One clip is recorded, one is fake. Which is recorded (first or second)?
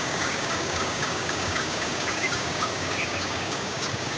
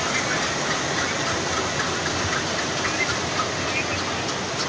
second